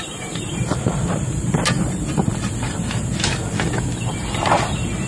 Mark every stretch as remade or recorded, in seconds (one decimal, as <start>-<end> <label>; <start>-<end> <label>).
0.0-2.2 remade; 2.2-5.1 recorded